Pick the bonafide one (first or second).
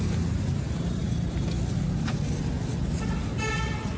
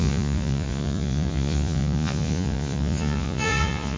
first